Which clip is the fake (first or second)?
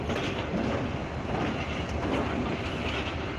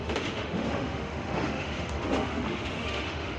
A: second